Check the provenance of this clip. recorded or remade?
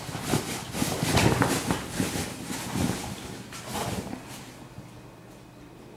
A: recorded